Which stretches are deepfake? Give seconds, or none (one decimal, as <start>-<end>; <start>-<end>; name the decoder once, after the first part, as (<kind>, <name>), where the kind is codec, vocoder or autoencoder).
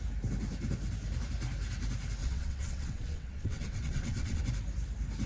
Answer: 2.2-4.4 (vocoder, WaveNeXt)